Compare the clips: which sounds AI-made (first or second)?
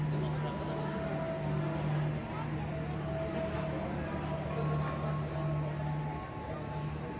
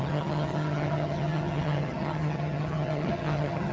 second